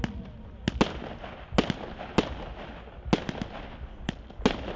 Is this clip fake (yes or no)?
no